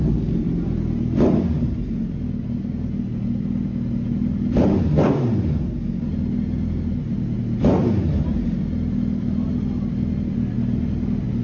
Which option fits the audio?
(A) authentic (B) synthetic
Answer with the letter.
A